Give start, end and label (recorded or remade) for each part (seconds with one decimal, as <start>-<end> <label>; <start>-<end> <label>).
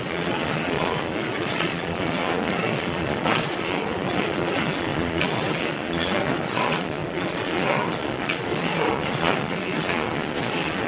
0.0-10.9 remade